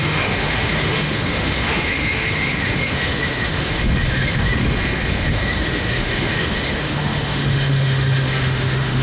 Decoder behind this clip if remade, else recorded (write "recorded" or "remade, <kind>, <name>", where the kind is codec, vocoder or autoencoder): remade, autoencoder, DAC-VAE